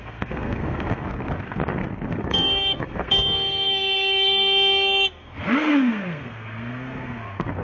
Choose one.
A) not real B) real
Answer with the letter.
A